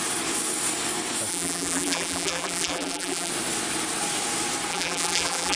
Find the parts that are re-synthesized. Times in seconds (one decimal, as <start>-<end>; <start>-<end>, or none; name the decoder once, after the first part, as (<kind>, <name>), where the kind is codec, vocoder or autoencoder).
1.3-3.3 (vocoder, BigVGAN v2); 4.7-5.6